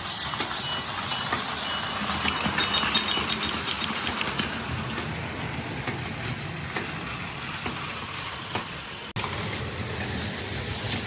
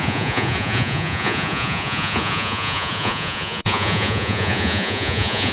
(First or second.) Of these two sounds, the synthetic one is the second